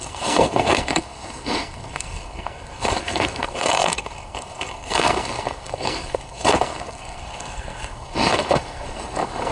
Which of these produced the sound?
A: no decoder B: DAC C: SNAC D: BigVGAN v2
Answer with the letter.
C